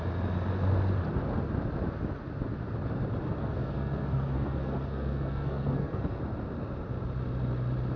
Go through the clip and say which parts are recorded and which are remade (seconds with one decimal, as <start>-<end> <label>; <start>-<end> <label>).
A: 0.0-3.4 recorded; 3.4-6.2 remade; 6.2-8.0 recorded